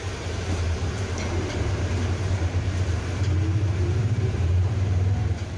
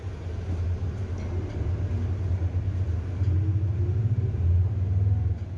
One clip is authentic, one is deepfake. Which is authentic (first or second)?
second